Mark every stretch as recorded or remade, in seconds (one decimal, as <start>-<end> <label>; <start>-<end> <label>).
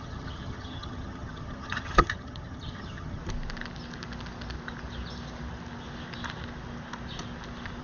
0.0-3.2 remade; 3.2-7.8 recorded